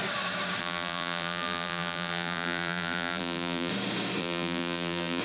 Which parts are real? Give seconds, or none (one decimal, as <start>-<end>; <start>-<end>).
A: 0.0-0.6; 3.7-4.2